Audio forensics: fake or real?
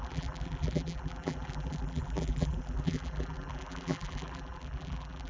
fake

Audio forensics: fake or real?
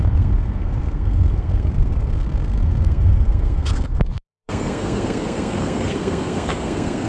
fake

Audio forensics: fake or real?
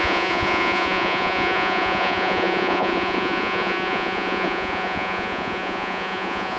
fake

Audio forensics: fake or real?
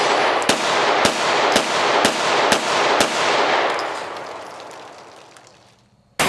real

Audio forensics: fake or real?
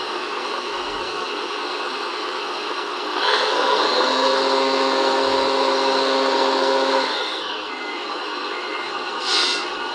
fake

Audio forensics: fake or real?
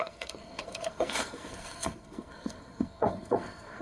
fake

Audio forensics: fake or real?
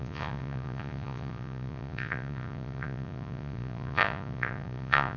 fake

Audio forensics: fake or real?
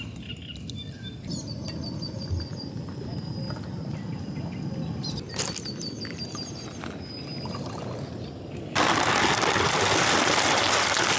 real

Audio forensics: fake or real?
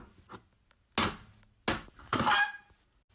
real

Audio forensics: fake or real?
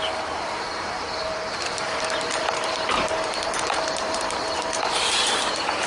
fake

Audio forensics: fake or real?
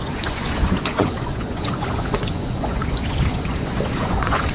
fake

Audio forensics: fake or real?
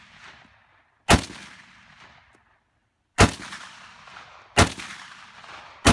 real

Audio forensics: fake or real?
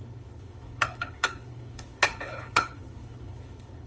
fake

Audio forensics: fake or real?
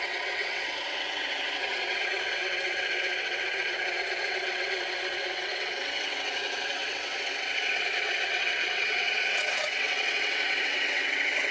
fake